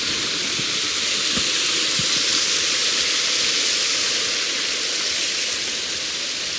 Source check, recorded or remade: recorded